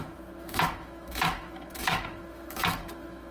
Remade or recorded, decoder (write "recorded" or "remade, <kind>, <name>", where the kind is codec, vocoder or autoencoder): remade, autoencoder, DAC-VAE